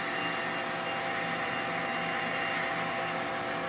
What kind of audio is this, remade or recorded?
recorded